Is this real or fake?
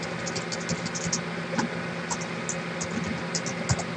real